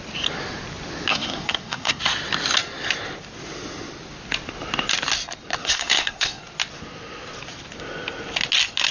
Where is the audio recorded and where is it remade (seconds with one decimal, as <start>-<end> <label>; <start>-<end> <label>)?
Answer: 0.0-1.1 recorded; 1.1-2.0 remade; 2.0-5.6 recorded; 5.6-6.4 remade; 6.4-8.9 recorded